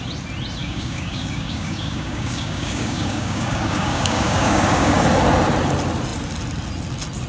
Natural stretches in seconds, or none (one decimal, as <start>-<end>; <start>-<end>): 0.0-0.6; 5.0-7.3